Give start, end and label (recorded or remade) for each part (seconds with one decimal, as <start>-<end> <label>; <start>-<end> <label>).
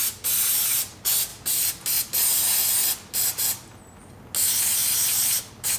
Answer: 0.0-4.8 recorded; 4.8-5.3 remade; 5.3-5.8 recorded